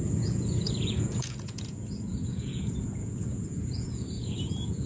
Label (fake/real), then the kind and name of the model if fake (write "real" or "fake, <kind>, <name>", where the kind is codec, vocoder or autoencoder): fake, vocoder, Vocos